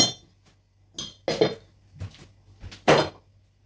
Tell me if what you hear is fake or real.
real